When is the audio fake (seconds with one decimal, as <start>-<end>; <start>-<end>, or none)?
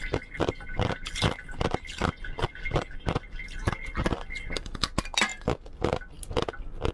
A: none